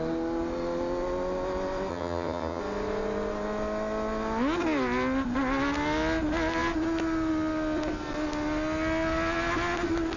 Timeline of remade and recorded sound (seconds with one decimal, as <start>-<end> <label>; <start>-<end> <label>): 0.0-1.9 recorded; 1.9-2.6 remade; 2.6-10.2 recorded